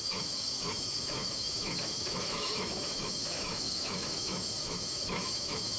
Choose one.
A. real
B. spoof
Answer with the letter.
B